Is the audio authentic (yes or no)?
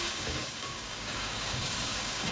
no